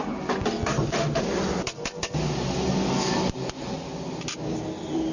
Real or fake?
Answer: real